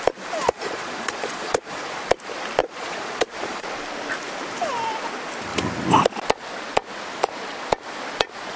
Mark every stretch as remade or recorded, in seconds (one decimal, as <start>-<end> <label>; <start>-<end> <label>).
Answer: 0.0-0.4 recorded; 0.4-2.0 remade; 2.0-2.6 recorded; 2.6-3.7 remade; 3.7-8.6 recorded